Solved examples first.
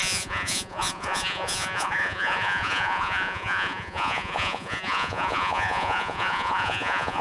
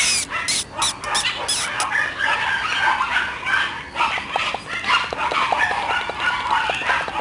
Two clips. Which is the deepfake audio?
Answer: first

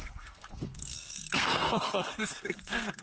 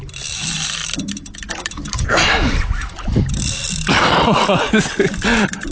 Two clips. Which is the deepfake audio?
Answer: first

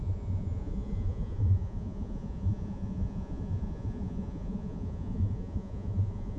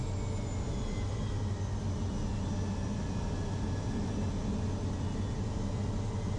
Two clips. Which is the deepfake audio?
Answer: first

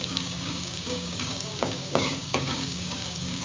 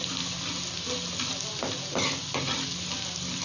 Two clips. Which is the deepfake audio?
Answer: first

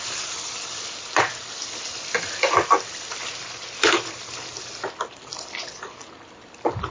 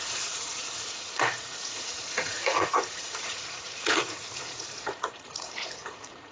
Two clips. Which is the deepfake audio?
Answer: second